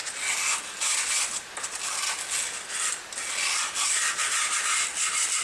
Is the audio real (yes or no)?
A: yes